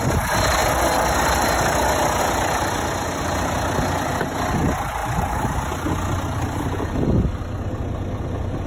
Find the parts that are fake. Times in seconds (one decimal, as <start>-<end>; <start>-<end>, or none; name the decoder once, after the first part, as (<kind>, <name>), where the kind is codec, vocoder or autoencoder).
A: none